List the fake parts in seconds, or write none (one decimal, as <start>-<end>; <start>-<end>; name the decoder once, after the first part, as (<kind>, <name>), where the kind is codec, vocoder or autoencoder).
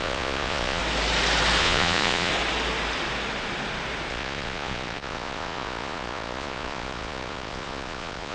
0.0-0.8 (vocoder, Vocos); 1.6-2.3; 4.1-8.3